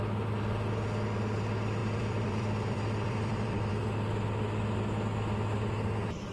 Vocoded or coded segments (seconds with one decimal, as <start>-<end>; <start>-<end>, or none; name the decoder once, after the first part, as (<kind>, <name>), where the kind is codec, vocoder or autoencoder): 1.8-3.7 (vocoder, BigVGAN v2)